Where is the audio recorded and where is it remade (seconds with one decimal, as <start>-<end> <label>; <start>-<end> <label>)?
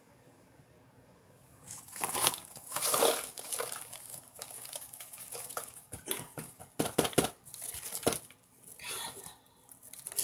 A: 0.0-6.6 remade; 6.6-10.2 recorded